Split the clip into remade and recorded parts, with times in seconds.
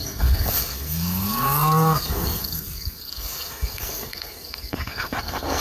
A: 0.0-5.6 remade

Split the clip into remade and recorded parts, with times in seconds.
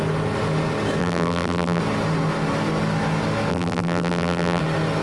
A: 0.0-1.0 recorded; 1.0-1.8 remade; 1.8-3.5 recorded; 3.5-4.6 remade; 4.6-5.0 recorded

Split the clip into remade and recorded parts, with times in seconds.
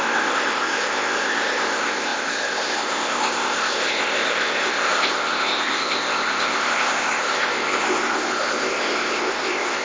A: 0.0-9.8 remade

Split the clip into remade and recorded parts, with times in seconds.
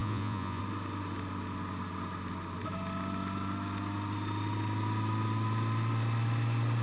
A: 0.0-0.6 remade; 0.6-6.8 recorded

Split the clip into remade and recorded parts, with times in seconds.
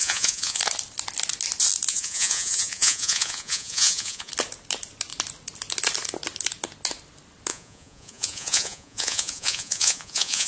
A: 0.0-0.6 remade; 0.6-1.9 recorded; 1.9-4.3 remade; 4.3-7.5 recorded; 7.5-10.5 remade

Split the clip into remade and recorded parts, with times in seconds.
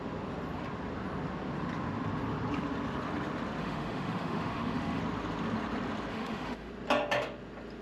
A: 0.0-3.6 recorded; 3.6-5.0 remade; 5.0-6.1 recorded; 6.1-6.7 remade; 6.7-7.8 recorded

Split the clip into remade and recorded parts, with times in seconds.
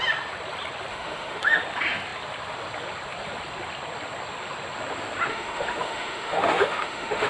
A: 0.0-0.9 recorded; 0.9-1.6 remade; 1.6-5.3 recorded; 5.3-7.3 remade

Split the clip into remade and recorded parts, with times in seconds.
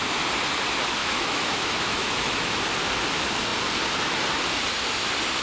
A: 0.0-1.0 recorded; 1.0-2.6 remade; 2.6-5.4 recorded